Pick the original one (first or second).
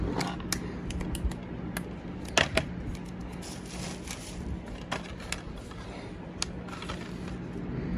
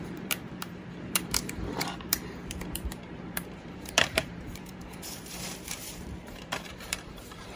first